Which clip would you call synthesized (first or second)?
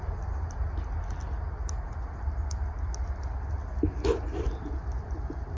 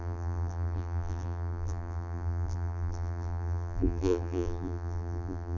second